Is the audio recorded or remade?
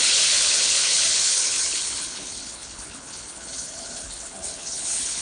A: remade